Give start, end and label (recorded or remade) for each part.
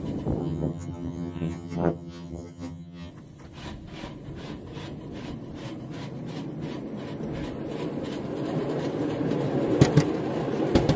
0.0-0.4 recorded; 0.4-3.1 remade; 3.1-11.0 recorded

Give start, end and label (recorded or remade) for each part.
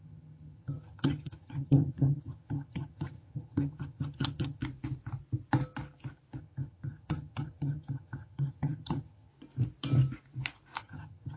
0.0-4.6 remade; 4.6-6.4 recorded; 6.4-9.3 remade; 9.3-10.8 recorded; 10.8-11.4 remade